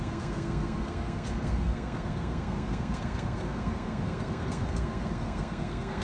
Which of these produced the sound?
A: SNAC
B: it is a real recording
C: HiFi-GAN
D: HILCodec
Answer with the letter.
A